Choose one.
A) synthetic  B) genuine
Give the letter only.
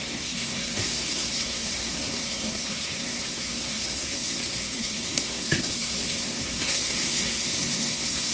A